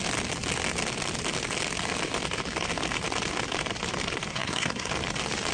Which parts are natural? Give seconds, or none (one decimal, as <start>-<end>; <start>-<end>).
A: 0.0-4.3; 4.9-5.5